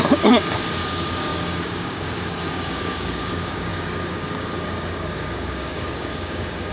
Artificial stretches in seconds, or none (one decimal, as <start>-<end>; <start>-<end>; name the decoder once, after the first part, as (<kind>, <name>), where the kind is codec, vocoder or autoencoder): 0.0-6.7 (codec, DAC)